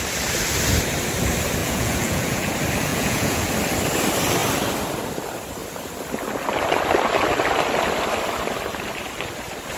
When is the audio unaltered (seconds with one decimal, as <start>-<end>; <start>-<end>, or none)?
0.0-1.6; 2.5-2.9; 3.5-9.8